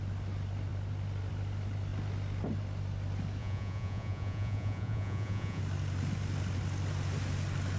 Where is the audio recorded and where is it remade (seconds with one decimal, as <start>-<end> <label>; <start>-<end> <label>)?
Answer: 0.0-3.4 recorded; 3.4-5.6 remade; 5.6-7.8 recorded